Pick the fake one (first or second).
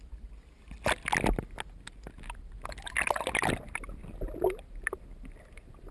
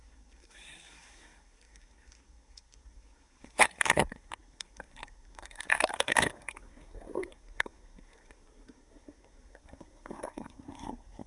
second